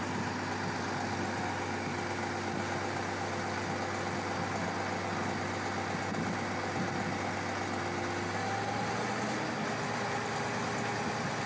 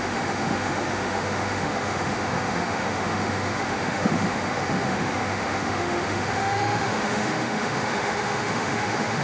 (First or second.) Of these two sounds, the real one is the first